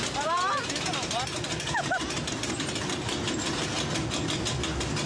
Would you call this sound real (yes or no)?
yes